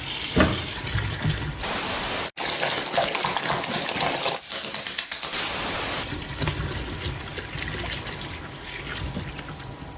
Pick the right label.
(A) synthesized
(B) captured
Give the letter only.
B